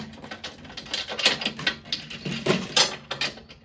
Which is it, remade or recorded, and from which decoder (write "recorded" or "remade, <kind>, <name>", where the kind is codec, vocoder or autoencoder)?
recorded